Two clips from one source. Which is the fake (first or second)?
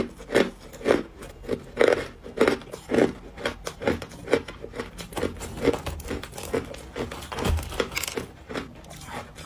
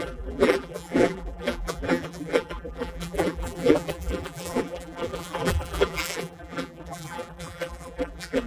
second